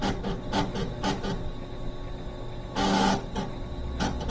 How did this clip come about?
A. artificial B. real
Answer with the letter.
B